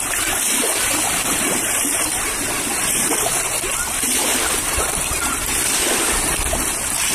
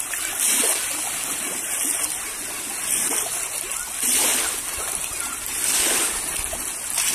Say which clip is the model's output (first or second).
first